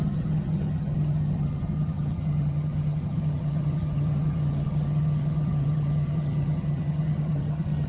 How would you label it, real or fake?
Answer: fake